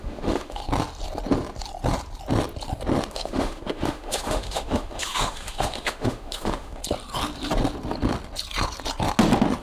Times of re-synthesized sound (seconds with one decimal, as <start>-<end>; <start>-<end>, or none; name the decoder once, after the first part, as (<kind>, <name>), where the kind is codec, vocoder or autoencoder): 0.0-0.6 (autoencoder, DAC-VAE); 3.1-6.8